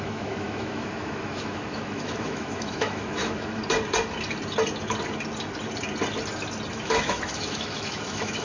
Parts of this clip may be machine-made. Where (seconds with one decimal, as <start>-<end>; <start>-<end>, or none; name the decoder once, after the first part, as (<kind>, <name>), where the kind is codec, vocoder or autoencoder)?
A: 0.0-3.6 (autoencoder, DAC-VAE); 6.7-8.4